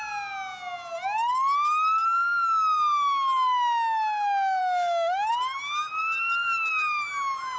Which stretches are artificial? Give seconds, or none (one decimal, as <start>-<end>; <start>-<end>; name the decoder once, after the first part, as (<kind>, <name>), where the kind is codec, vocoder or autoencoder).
none